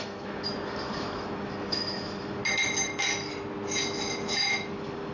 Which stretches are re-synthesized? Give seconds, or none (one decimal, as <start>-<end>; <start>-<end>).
0.0-2.4; 4.6-5.1